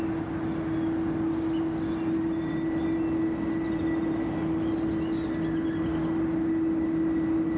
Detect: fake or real real